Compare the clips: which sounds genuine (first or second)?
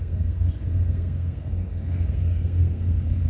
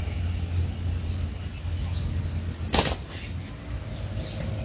second